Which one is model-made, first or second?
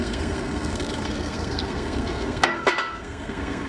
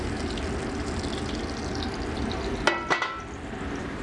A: first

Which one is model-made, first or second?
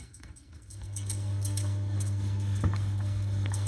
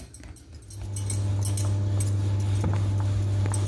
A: first